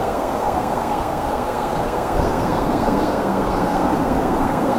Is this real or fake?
fake